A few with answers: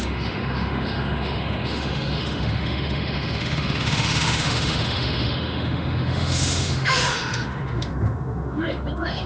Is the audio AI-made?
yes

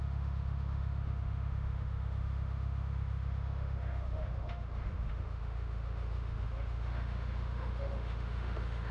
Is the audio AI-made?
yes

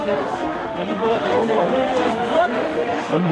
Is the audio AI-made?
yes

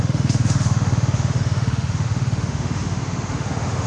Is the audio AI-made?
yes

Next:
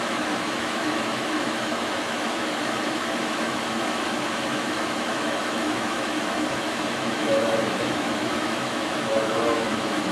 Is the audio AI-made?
yes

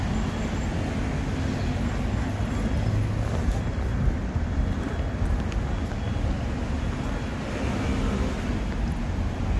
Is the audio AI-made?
no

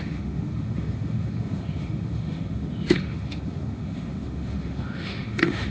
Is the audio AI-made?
yes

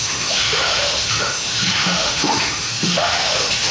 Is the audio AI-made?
yes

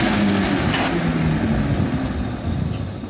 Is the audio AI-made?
no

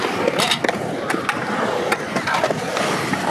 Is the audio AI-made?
no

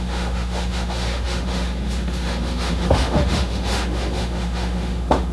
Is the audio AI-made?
yes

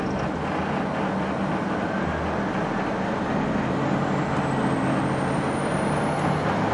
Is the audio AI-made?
no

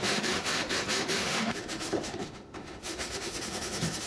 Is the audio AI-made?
yes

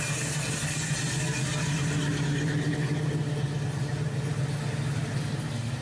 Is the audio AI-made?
no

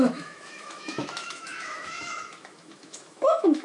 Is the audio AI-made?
yes